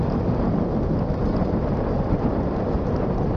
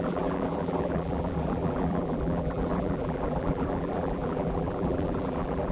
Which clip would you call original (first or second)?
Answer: first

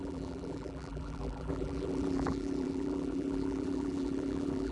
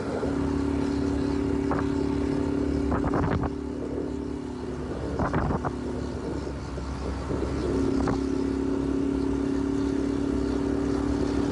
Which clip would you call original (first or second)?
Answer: second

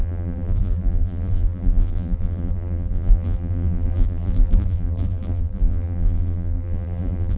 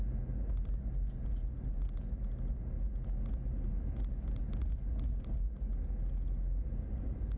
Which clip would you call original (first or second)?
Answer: second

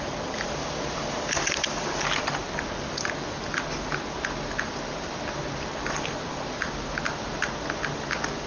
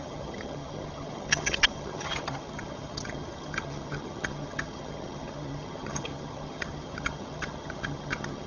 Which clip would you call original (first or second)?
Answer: first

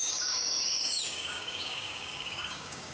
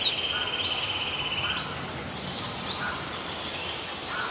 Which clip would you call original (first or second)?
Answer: second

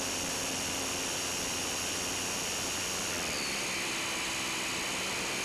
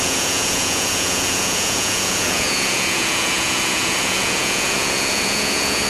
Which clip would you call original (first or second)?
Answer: first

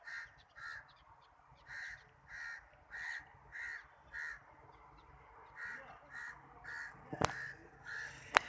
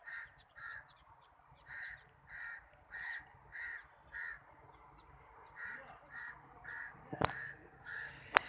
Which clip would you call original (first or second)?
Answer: first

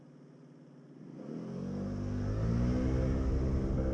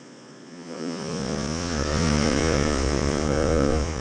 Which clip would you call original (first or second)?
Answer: first